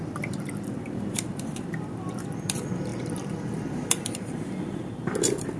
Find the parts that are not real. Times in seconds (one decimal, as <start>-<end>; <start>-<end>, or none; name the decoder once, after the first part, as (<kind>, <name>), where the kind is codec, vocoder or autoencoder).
0.0-5.6 (vocoder, BigVGAN v2)